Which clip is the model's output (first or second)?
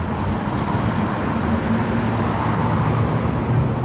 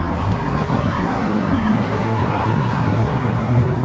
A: second